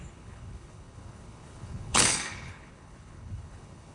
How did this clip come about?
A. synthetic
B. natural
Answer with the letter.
A